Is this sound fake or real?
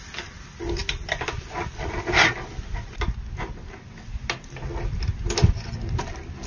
real